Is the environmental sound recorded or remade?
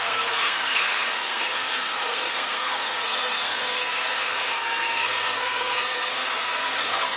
remade